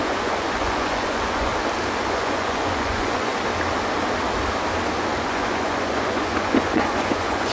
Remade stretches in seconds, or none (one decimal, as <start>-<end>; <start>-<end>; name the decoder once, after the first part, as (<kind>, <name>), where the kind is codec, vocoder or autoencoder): 0.0-1.5 (vocoder, Vocos); 2.1-3.3; 5.2-7.5